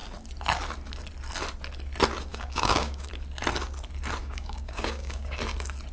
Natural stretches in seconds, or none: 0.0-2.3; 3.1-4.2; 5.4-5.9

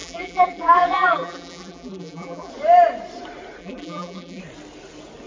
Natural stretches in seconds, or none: 2.5-3.6; 4.4-5.3

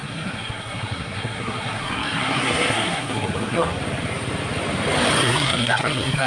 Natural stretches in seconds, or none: 3.8-5.2

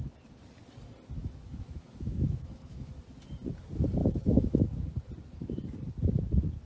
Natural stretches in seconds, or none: 0.0-1.2; 2.9-4.0; 4.8-6.7

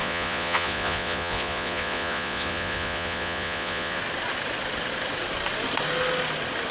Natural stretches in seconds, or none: 4.0-6.7